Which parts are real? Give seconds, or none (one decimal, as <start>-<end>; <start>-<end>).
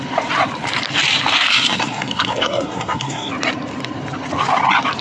0.0-1.5; 3.3-5.0